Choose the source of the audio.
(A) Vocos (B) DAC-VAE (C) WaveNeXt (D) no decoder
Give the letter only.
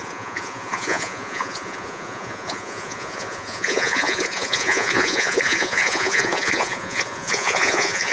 A